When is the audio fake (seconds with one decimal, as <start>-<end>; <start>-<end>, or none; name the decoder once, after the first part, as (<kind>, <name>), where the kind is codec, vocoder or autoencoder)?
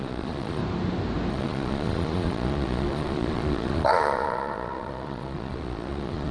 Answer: 0.0-0.6 (vocoder, Vocos); 1.3-6.3